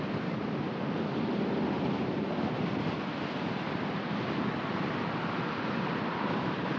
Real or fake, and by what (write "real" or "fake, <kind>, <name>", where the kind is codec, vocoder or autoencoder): real